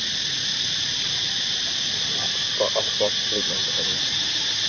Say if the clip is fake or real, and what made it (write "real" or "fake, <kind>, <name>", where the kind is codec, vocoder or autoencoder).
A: real